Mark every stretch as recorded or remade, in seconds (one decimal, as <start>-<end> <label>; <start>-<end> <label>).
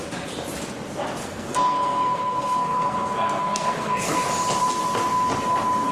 0.0-1.2 recorded; 1.2-4.3 remade; 4.3-5.9 recorded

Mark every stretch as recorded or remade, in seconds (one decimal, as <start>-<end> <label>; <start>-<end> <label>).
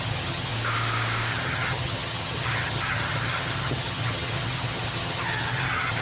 0.0-0.5 remade; 0.5-1.3 recorded; 1.3-6.0 remade